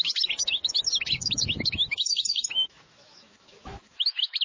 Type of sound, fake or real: fake